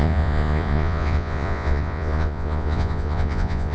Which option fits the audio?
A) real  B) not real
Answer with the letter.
B